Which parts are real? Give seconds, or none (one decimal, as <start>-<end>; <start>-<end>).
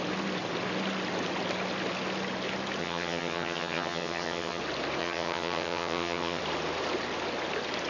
0.0-2.8; 4.6-5.0; 6.4-7.9